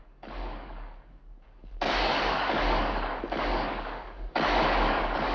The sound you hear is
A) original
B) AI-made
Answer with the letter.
B